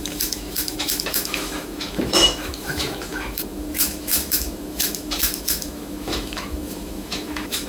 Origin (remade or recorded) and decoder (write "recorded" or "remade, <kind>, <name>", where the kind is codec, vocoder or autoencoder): remade, autoencoder, DAC-VAE